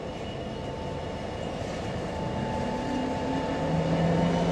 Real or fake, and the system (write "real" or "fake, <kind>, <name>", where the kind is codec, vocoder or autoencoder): real